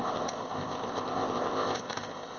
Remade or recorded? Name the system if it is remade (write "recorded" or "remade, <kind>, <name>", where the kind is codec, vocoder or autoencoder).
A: remade, codec, ZipCodec